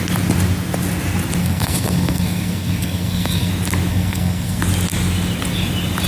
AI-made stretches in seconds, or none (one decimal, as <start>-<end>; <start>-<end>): 1.4-3.5; 3.9-4.6